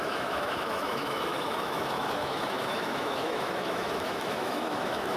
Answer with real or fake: fake